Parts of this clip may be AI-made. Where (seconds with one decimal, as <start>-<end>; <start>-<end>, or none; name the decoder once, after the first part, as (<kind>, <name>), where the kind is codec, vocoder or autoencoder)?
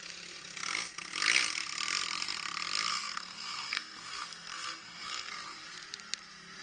2.9-5.3 (codec, SNAC)